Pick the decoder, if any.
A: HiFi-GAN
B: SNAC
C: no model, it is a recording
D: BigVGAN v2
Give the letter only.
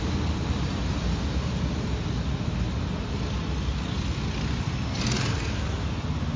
C